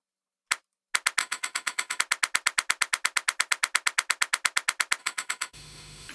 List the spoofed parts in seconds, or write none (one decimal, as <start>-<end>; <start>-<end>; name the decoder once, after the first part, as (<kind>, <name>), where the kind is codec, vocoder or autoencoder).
1.2-2.0 (autoencoder, DAC-VAE); 5.0-6.1